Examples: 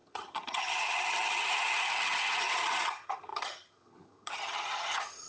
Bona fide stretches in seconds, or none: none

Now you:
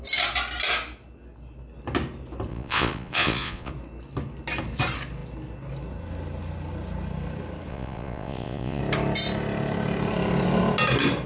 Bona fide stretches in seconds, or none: 0.0-2.5; 3.7-7.7; 8.8-11.3

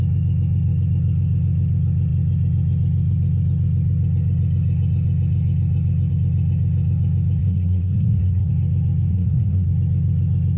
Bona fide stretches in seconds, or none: 0.0-7.4; 8.5-9.1; 9.7-10.6

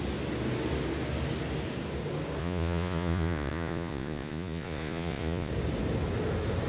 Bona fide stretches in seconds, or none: 0.0-2.4; 5.5-6.7

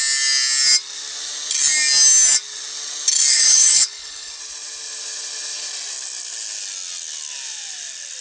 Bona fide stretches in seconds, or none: 0.0-3.3; 4.4-8.2

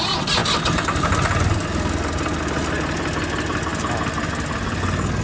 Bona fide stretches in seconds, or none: 0.0-5.2